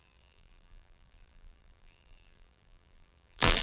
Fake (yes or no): yes